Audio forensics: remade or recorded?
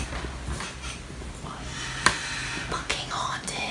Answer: recorded